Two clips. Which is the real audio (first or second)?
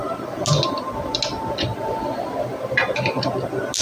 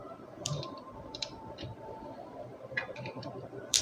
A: first